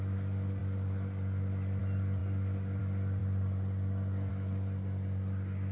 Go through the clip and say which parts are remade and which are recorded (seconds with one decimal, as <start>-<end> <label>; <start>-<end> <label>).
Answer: 0.0-5.7 recorded